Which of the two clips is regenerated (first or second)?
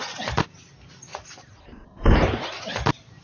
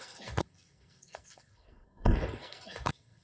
second